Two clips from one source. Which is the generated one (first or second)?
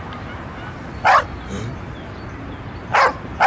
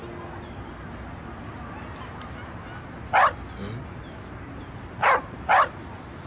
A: first